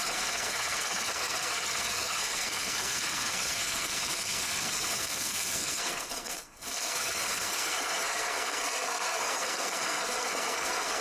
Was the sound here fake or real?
fake